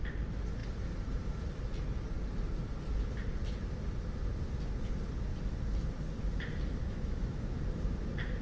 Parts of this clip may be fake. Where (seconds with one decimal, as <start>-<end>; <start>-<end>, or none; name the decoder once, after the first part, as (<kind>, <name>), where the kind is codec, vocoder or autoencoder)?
6.8-7.6 (autoencoder, DAC-VAE)